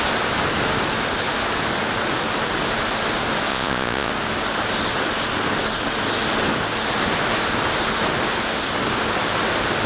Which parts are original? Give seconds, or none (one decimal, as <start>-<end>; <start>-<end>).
0.0-3.5; 4.1-9.9